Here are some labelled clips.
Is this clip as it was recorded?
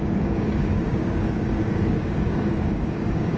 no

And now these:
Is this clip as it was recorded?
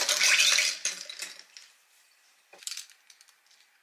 yes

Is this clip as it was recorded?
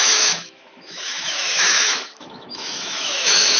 no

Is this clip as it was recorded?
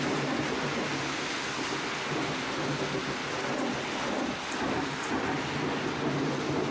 yes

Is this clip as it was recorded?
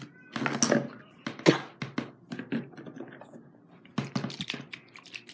yes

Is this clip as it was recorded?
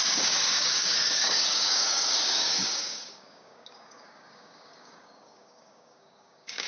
no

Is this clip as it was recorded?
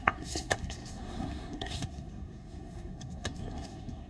no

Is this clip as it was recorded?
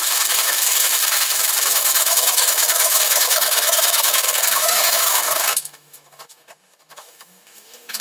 no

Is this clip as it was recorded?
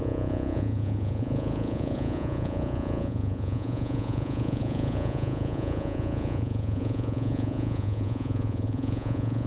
no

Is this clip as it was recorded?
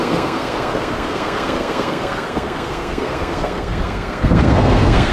no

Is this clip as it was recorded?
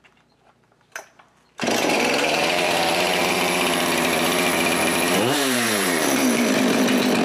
no